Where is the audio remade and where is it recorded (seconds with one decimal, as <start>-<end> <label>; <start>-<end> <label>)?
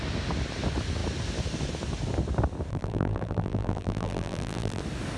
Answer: 0.0-2.7 recorded; 2.7-4.8 remade; 4.8-5.2 recorded